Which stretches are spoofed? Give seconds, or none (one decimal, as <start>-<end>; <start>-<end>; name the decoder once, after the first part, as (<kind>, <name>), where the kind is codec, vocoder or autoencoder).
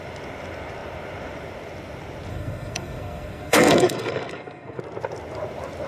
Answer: 2.3-4.8 (codec, SNAC)